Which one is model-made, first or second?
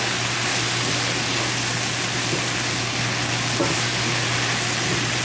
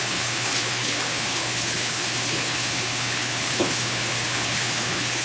second